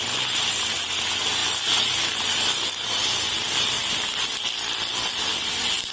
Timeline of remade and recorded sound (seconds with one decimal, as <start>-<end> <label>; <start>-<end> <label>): 0.0-5.9 recorded